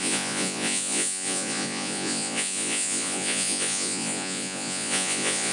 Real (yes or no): no